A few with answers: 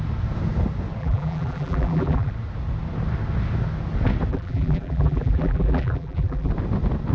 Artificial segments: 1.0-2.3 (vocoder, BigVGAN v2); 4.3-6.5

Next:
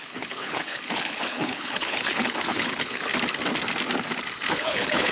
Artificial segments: 0.0-3.1 (codec, HILCodec); 4.5-5.1